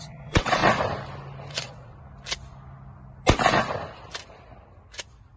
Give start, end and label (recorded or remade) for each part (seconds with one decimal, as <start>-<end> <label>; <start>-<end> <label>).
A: 0.0-0.6 remade; 0.6-1.5 recorded; 1.5-1.9 remade; 1.9-5.4 recorded